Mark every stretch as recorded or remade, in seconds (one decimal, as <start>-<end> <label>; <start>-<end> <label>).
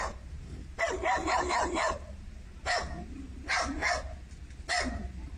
0.0-3.8 remade; 3.8-4.7 recorded; 4.7-5.4 remade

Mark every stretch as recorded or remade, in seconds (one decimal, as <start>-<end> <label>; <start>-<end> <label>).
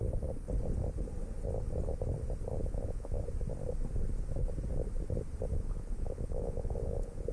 0.0-2.6 recorded; 2.6-3.2 remade; 3.2-5.5 recorded; 5.5-7.3 remade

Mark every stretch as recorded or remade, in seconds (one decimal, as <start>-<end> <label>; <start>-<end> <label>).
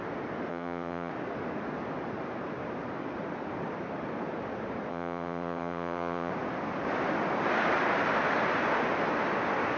0.0-0.5 recorded; 0.5-1.1 remade; 1.1-4.9 recorded; 4.9-6.3 remade; 6.3-9.8 recorded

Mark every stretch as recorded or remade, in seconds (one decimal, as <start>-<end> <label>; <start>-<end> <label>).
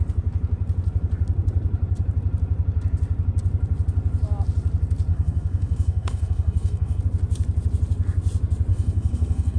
0.0-5.1 recorded; 5.1-7.0 remade; 7.0-8.7 recorded; 8.7-9.6 remade